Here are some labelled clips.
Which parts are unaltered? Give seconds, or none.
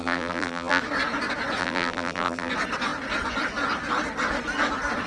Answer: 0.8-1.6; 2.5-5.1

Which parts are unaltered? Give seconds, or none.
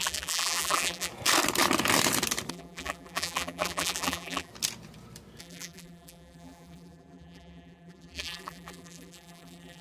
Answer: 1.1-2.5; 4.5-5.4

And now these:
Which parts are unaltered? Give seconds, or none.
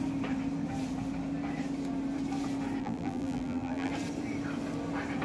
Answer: 0.0-2.8; 3.9-5.2